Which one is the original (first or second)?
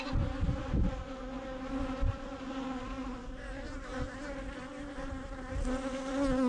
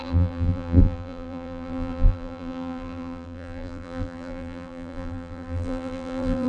first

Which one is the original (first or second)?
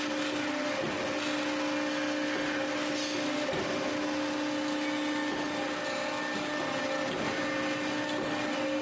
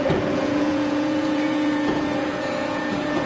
first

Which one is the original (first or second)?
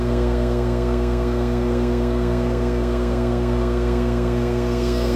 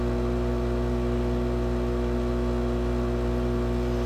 second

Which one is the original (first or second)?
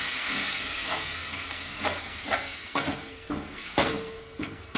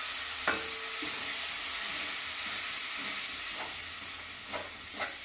second